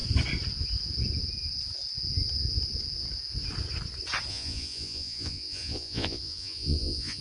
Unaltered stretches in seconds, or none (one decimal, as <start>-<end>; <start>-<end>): 0.0-4.3